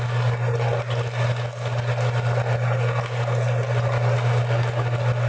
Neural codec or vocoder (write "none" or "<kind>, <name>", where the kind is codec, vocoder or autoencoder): none